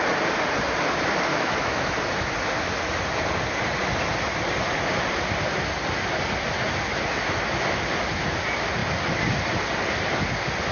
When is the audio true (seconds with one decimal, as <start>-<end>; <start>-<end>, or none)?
0.0-1.3; 2.3-10.7